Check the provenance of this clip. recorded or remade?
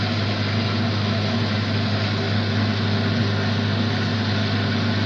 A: recorded